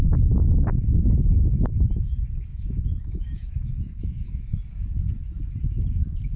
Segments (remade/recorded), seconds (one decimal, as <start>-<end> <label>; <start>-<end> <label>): 0.0-2.5 recorded; 2.5-4.3 remade; 4.3-6.4 recorded